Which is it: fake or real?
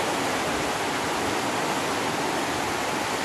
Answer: real